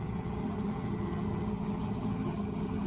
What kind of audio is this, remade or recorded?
remade